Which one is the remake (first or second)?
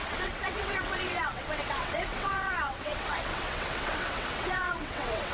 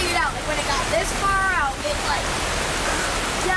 first